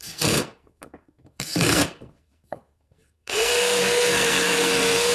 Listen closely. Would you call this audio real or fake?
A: fake